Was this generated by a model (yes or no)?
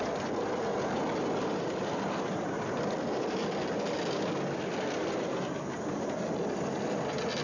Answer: no